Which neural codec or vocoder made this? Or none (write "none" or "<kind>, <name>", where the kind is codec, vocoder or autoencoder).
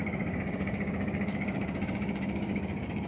codec, DAC